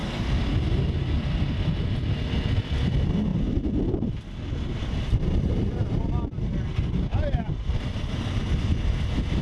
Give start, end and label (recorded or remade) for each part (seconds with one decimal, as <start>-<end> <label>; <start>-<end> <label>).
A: 0.0-3.3 recorded; 3.3-8.2 remade; 8.2-9.4 recorded